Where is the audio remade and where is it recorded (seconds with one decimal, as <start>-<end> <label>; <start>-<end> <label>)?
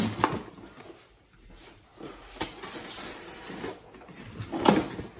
0.0-5.2 recorded